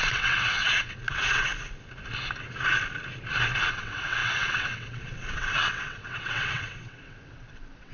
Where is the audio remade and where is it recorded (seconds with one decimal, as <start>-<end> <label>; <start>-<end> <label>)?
0.0-1.5 remade; 1.5-3.7 recorded; 3.7-7.9 remade